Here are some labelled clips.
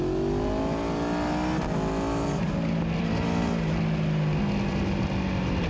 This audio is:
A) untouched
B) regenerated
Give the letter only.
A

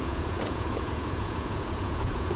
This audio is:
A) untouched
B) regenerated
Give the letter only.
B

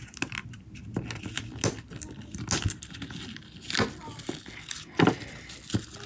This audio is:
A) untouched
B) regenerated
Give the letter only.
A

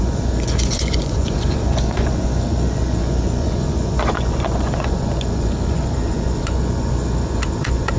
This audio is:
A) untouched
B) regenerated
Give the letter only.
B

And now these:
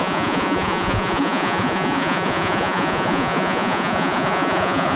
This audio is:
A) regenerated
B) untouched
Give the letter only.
A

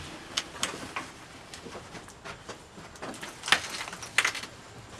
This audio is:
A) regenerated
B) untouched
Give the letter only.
B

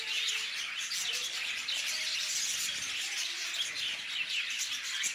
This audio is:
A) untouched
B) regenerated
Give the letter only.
A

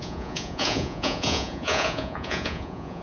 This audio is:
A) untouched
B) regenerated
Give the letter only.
B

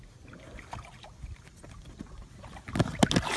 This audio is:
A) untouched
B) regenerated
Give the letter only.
A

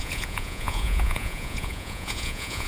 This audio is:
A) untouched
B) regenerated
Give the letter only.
B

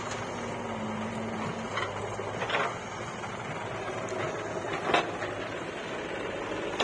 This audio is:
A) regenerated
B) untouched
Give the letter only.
B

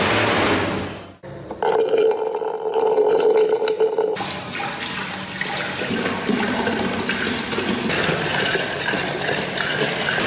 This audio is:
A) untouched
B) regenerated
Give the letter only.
A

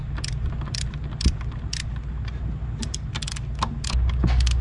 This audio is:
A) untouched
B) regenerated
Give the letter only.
A